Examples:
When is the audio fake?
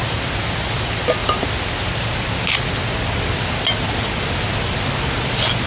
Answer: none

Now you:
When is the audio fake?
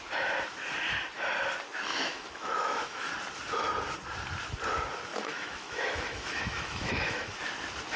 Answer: 1.9-3.1 (autoencoder, DAC-VAE); 5.1-7.4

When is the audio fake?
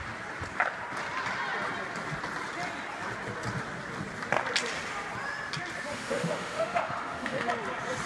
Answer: 5.9-7.5 (autoencoder, DAC-VAE)